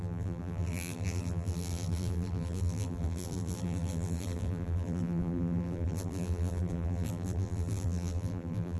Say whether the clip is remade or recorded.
remade